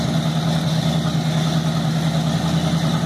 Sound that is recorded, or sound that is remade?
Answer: recorded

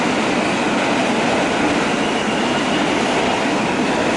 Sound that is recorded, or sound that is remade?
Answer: recorded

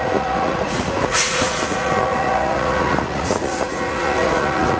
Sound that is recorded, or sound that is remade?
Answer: remade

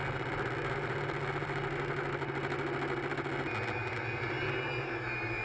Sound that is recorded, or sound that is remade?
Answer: recorded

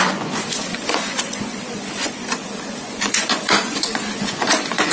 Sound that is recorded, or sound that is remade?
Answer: remade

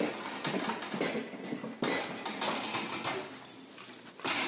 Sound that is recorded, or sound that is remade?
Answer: recorded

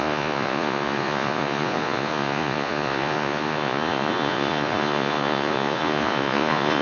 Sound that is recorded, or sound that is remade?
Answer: remade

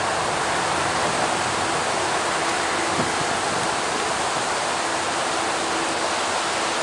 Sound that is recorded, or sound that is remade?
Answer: recorded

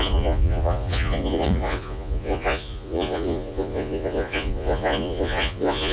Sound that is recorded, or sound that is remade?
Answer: remade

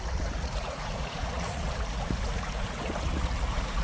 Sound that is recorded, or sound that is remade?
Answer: remade